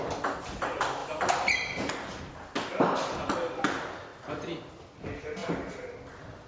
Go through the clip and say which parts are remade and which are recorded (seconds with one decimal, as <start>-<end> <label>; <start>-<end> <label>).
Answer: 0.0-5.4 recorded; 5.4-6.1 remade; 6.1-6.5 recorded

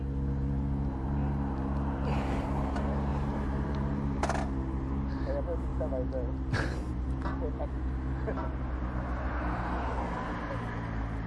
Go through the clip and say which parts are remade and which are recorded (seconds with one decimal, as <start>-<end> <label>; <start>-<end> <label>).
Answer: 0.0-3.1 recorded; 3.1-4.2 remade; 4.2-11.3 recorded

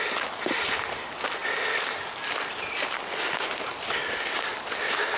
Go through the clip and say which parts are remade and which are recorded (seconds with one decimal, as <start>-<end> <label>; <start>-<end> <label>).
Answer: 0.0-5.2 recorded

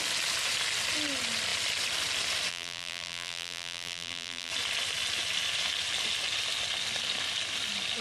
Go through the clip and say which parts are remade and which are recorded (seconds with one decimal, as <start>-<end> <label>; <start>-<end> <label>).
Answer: 0.0-2.5 recorded; 2.5-4.5 remade; 4.5-8.0 recorded